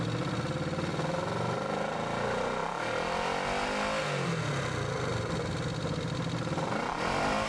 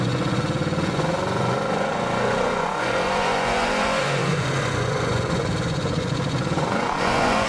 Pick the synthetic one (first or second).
second